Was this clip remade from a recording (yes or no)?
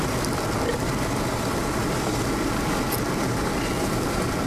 no